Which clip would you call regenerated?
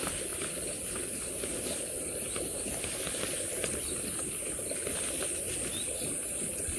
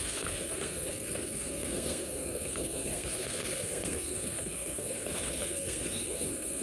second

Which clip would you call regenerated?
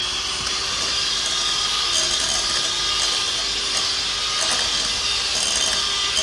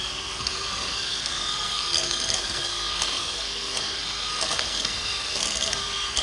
second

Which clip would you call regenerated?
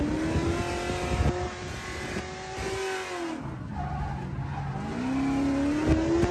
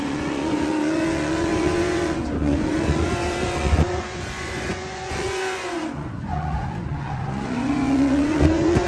second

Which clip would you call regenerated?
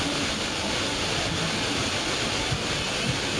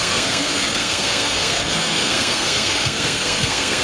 second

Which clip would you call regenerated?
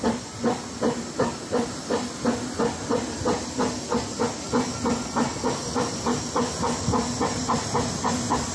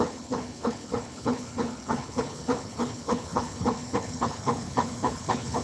second